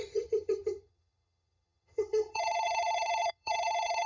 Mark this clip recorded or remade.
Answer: remade